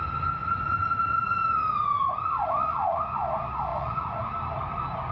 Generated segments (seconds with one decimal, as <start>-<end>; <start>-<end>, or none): 0.4-3.0; 3.7-4.3